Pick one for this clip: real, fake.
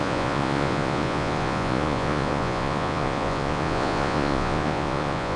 fake